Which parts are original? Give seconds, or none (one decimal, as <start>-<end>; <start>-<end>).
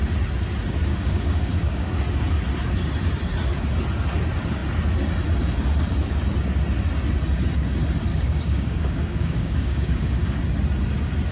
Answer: 0.0-0.9; 2.0-8.1; 10.4-11.3